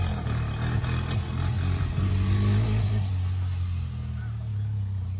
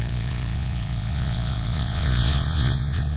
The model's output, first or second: second